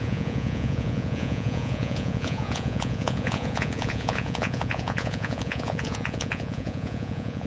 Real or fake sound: fake